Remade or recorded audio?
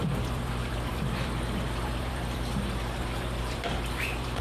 remade